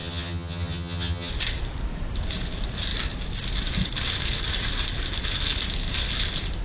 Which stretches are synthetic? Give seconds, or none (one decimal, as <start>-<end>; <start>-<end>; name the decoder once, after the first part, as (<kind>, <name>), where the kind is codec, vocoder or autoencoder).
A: 0.0-1.3 (vocoder, HiFi-GAN)